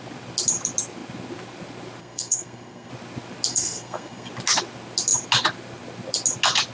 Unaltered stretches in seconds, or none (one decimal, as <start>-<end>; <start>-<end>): 0.0-2.0; 2.9-3.5; 4.3-6.7